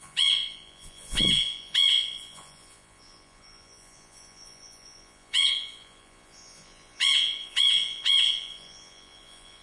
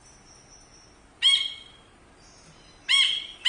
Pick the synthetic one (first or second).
first